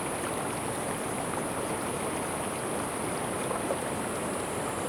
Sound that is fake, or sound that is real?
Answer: real